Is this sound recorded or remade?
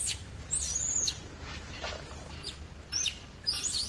remade